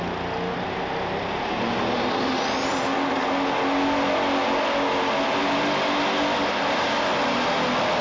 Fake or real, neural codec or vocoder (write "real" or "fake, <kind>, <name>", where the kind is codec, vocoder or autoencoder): real